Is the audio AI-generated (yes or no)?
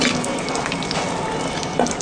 no